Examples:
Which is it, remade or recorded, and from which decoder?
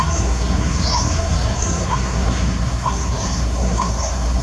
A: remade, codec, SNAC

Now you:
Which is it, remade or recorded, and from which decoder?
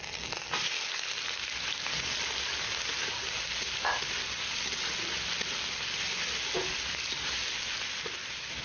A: recorded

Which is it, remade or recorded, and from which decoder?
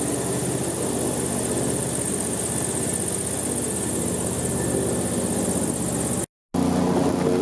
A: recorded